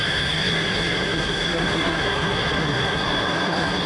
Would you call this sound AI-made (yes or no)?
yes